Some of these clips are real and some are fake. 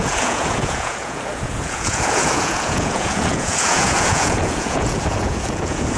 fake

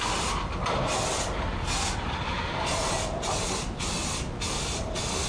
real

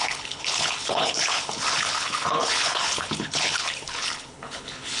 fake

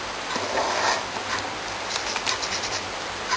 real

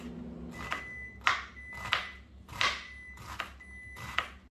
real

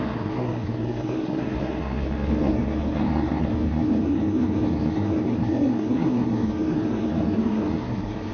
fake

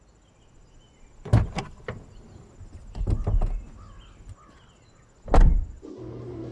real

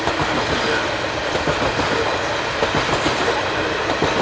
real